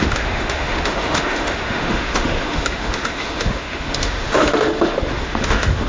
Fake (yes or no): yes